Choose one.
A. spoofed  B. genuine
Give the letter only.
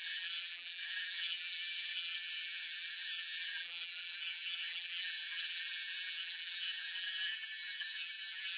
A